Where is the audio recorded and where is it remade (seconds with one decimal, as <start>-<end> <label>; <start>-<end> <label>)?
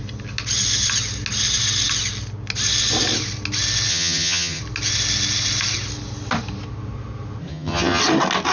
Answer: 0.0-3.9 recorded; 3.9-4.6 remade; 4.6-7.5 recorded; 7.5-8.0 remade; 8.0-8.5 recorded